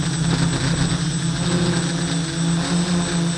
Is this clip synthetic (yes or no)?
no